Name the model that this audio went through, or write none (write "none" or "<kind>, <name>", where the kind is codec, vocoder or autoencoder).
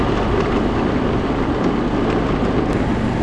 none